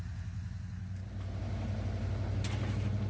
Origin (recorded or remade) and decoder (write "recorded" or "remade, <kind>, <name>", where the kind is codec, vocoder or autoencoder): recorded